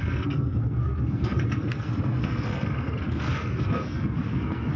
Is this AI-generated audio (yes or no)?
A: yes